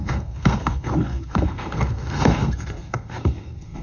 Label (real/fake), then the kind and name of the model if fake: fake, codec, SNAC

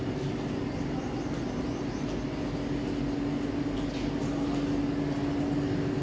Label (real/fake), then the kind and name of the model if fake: real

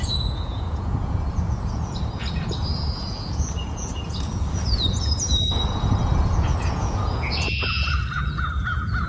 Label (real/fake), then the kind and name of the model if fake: fake, vocoder, Vocos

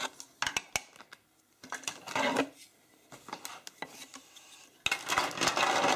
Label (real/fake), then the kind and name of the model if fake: real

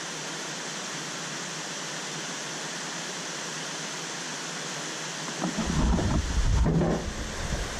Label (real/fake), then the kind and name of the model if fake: real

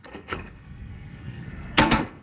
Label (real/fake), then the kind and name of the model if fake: fake, codec, SNAC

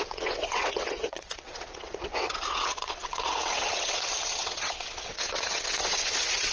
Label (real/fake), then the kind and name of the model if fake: fake, vocoder, WaveNeXt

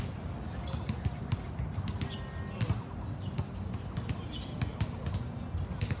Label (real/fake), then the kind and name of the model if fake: real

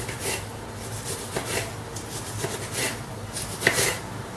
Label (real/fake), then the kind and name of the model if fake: real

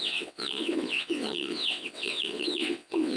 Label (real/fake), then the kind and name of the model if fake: fake, vocoder, WaveNeXt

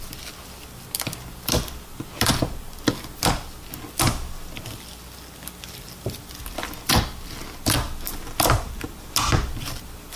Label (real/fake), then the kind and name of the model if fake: real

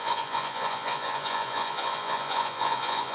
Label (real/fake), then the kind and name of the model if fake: fake, vocoder, Vocos